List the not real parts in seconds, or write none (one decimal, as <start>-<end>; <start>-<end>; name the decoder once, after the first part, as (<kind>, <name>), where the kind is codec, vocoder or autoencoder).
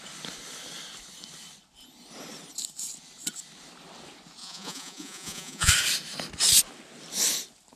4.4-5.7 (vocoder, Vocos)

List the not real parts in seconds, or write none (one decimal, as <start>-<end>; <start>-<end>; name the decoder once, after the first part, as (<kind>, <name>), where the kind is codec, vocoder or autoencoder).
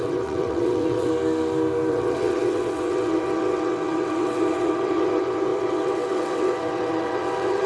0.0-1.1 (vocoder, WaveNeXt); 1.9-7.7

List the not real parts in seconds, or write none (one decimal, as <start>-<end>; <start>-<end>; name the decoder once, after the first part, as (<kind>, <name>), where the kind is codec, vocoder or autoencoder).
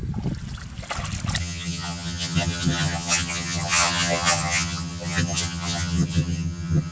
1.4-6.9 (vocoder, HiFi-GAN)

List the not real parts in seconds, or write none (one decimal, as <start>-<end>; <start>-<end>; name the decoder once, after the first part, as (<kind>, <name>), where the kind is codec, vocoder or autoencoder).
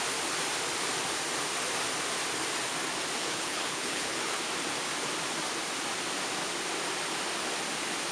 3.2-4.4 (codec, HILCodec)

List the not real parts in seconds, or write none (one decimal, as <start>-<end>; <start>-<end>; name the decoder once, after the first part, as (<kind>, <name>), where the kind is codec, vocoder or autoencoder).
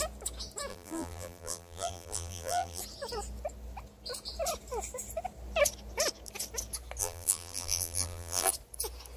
0.7-2.8 (vocoder, BigVGAN v2); 7.0-8.5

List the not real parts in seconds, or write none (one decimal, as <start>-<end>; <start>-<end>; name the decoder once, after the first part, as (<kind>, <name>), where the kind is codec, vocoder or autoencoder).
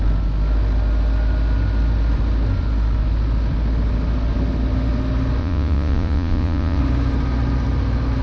5.4-6.8 (vocoder, Vocos)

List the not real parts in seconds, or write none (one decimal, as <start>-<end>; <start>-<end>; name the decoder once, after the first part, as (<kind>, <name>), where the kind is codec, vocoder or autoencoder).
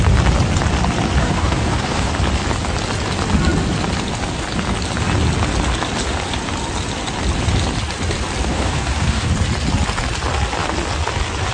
1.2-2.1 (codec, DAC); 8.5-9.3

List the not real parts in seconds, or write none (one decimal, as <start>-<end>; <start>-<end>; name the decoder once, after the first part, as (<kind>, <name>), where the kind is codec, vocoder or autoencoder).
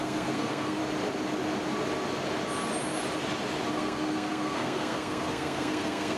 0.0-0.8 (codec, SNAC); 3.7-6.2